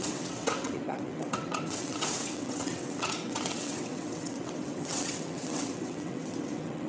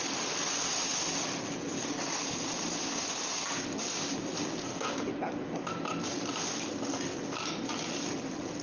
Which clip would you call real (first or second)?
second